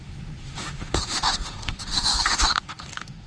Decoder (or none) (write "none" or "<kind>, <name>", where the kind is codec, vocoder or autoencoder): autoencoder, DAC-VAE